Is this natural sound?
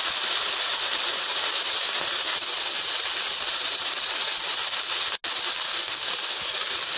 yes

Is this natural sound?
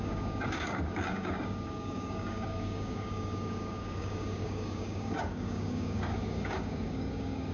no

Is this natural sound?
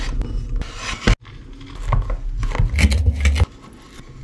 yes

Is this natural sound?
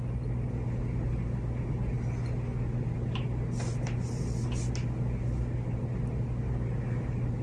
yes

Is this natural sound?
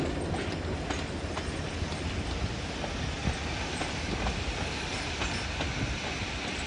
yes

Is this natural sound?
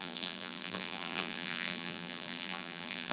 no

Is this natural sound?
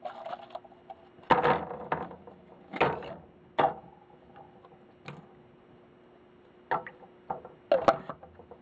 yes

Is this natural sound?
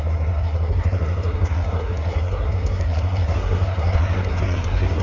no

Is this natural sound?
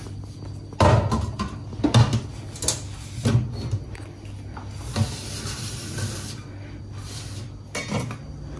yes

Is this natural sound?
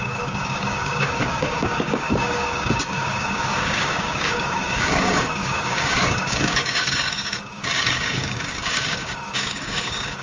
no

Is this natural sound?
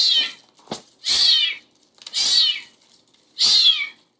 yes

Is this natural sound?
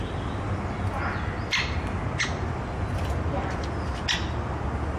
yes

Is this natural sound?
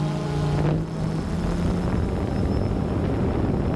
yes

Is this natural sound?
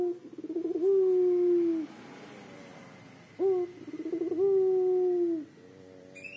yes